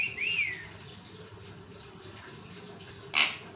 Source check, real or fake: real